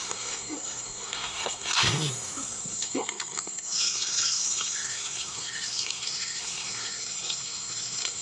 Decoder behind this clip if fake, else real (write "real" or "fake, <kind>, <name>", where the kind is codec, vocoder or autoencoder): fake, codec, SNAC